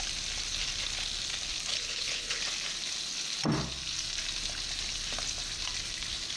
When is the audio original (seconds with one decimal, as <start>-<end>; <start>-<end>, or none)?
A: 0.0-1.7; 2.4-6.4